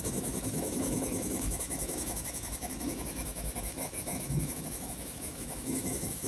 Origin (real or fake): fake